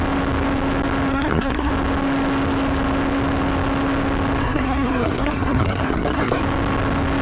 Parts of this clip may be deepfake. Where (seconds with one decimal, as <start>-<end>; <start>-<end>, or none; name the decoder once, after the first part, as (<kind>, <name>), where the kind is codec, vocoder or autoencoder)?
1.1-1.7 (codec, SNAC); 4.4-6.4